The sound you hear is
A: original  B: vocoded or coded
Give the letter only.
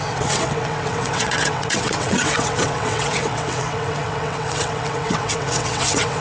B